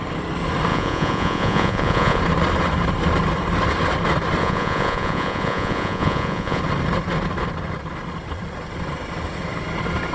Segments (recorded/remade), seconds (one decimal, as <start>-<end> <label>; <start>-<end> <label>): 0.0-0.7 recorded; 0.7-2.2 remade; 2.2-4.4 recorded; 4.4-6.6 remade; 6.6-10.1 recorded